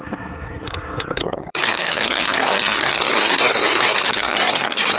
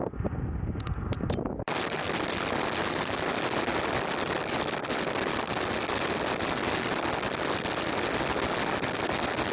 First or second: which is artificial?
first